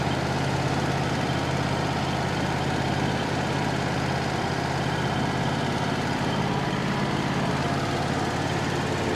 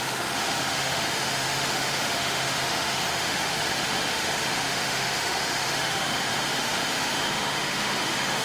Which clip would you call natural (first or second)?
first